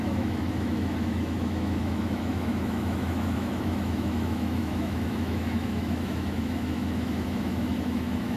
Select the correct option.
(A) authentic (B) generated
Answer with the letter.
B